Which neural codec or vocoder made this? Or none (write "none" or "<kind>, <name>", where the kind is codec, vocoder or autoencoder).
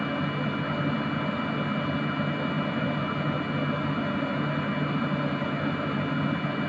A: none